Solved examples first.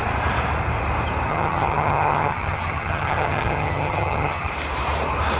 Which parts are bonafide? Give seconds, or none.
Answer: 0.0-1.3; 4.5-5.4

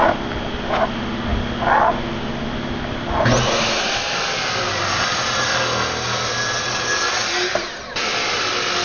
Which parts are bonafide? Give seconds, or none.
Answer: 0.0-8.8